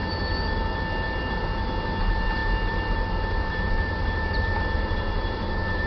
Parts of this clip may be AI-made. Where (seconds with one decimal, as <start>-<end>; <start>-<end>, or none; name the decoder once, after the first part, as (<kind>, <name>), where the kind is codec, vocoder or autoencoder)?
2.0-5.9 (vocoder, BigVGAN v2)